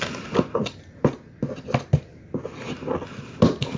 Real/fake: real